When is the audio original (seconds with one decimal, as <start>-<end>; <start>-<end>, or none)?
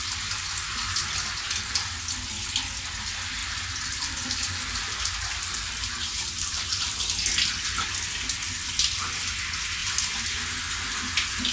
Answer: 0.0-3.4; 6.9-11.5